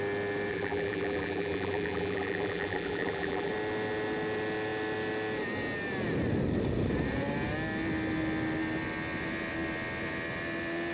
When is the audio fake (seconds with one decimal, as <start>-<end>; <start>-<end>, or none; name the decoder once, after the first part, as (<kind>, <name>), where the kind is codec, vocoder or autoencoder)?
0.5-3.5 (vocoder, BigVGAN v2)